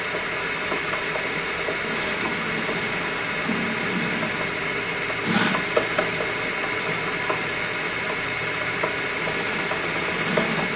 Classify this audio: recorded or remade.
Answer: recorded